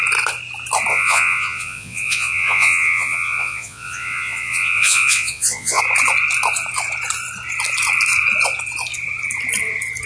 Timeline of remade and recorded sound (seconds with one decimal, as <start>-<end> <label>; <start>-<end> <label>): 0.0-0.9 recorded; 0.9-5.8 remade; 5.8-10.1 recorded